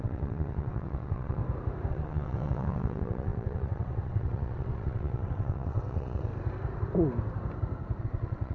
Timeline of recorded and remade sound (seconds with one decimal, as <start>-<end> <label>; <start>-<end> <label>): 0.0-1.4 remade; 1.4-1.9 recorded; 1.9-6.3 remade; 6.3-8.0 recorded; 8.0-8.5 remade